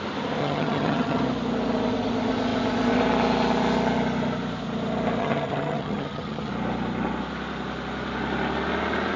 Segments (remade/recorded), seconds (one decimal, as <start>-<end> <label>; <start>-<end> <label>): 0.0-0.4 recorded; 0.4-1.2 remade; 1.2-5.2 recorded; 5.2-6.5 remade; 6.5-9.2 recorded